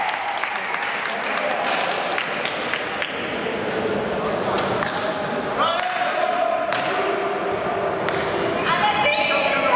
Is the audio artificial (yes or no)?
no